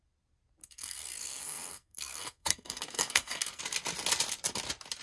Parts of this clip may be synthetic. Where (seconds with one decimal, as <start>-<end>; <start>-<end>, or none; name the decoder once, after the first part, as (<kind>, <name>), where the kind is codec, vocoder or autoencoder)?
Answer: 0.6-3.6 (codec, SNAC)